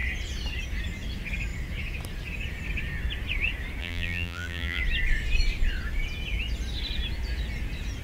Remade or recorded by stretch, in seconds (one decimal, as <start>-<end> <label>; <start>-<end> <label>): 0.0-3.8 recorded; 3.8-4.8 remade; 4.8-8.0 recorded